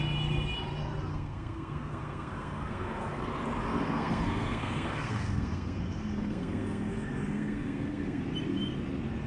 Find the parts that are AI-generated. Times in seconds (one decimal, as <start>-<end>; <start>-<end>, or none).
1.1-3.3; 3.7-8.2